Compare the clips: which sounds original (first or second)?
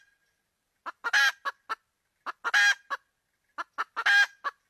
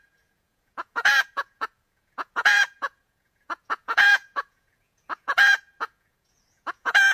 first